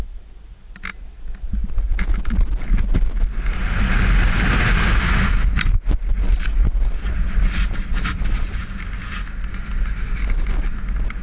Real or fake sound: real